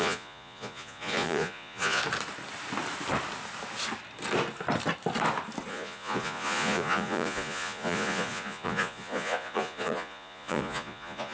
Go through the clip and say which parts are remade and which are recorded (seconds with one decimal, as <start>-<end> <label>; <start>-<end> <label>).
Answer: 0.0-2.0 remade; 2.0-5.7 recorded; 5.7-11.3 remade